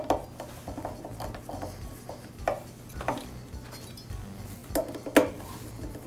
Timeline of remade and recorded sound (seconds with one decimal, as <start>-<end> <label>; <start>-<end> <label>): 0.0-6.1 recorded